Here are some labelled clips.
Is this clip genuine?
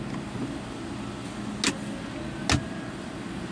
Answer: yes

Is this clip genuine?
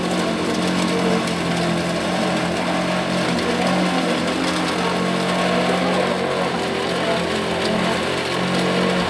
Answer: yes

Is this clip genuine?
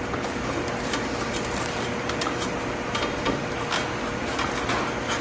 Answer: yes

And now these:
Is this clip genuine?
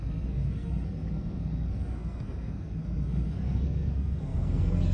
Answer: no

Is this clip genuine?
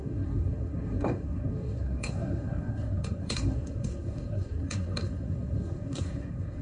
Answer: no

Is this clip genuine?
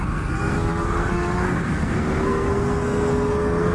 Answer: no